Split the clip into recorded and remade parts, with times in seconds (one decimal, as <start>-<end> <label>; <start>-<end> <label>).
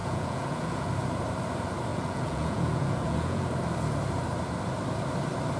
0.0-0.9 remade; 0.9-1.9 recorded; 1.9-3.5 remade; 3.5-5.6 recorded